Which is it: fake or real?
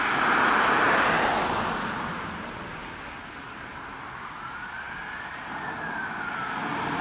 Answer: real